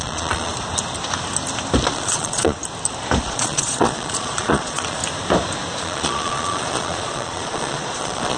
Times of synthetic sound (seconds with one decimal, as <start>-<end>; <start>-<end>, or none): 0.0-0.5; 1.9-2.6; 3.2-5.0; 5.8-8.4